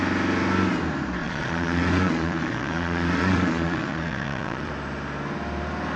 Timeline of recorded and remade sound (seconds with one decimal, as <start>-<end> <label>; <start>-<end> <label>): 0.0-1.2 recorded; 1.2-4.7 remade; 4.7-6.0 recorded